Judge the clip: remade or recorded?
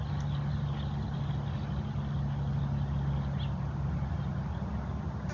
recorded